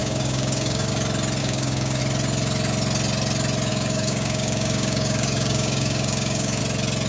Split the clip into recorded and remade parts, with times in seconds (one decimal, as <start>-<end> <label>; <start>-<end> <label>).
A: 0.0-0.9 remade; 0.9-1.4 recorded; 1.4-2.0 remade; 2.0-3.7 recorded; 3.7-6.6 remade; 6.6-7.1 recorded